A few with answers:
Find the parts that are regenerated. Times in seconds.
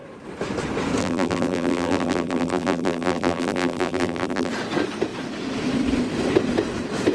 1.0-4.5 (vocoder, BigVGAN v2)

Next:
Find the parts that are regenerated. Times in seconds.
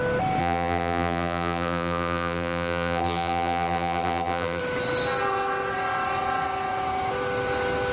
0.4-4.6 (vocoder, BigVGAN v2)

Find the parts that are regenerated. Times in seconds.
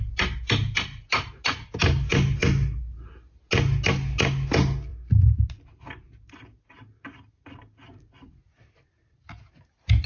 4.9-5.5 (vocoder, BigVGAN v2)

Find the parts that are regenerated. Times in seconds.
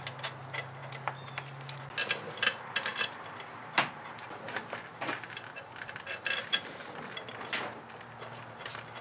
none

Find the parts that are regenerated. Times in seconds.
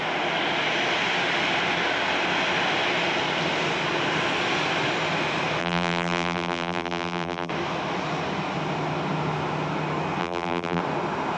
5.6-7.5 (vocoder, BigVGAN v2); 10.2-10.8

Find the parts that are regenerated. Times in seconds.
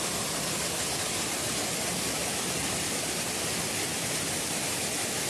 2.2-2.9 (vocoder, BigVGAN v2)